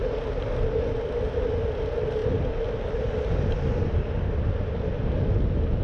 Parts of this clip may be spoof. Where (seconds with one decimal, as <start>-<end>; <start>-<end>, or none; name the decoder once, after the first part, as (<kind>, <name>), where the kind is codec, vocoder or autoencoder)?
none